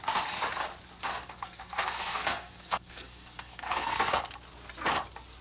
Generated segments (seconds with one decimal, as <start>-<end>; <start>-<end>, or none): 1.1-4.2